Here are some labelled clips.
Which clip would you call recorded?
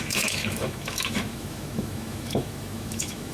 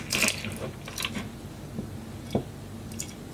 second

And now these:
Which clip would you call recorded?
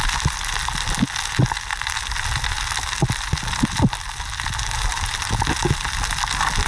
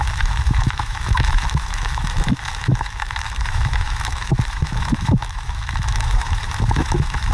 first